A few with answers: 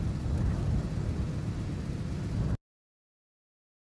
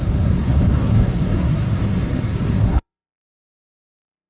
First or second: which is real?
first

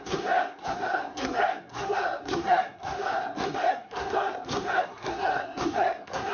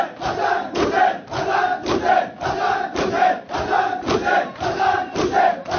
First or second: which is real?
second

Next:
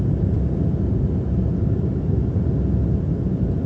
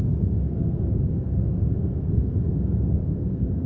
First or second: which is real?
first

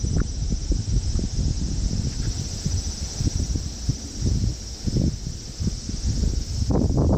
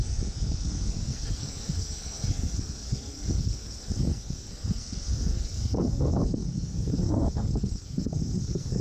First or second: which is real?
first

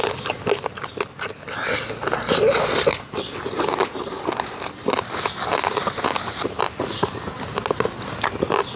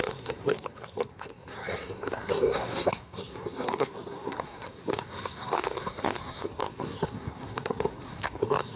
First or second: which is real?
first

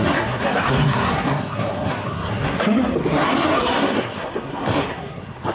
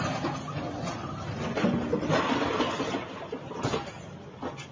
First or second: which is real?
second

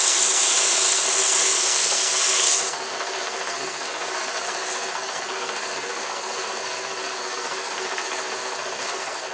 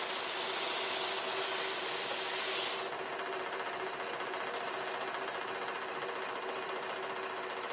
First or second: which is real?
second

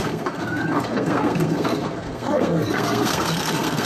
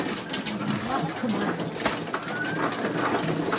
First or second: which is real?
second